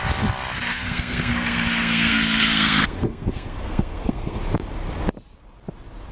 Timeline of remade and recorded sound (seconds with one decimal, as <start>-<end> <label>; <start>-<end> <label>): 0.0-0.7 recorded; 0.7-4.4 remade; 4.4-6.1 recorded